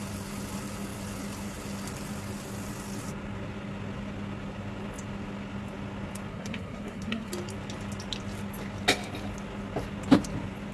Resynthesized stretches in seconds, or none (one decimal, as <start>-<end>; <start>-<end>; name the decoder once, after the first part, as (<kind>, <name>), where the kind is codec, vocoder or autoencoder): 6.3-7.3 (codec, SNAC)